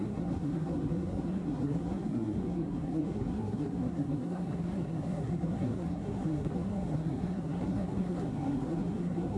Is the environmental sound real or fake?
fake